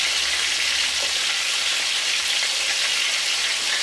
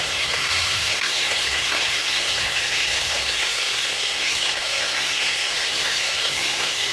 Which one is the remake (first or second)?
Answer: second